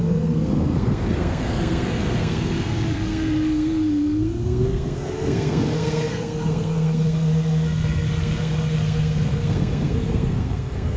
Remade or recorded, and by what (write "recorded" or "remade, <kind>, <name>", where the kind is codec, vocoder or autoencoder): remade, codec, SNAC